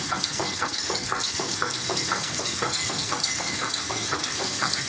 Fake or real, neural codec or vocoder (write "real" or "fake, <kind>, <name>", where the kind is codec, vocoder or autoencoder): fake, codec, SNAC